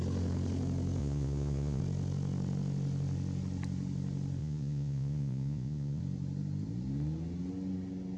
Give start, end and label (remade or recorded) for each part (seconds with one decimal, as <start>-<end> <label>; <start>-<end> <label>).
0.0-1.0 recorded; 1.0-1.8 remade; 1.8-4.4 recorded; 4.4-6.0 remade; 6.0-8.2 recorded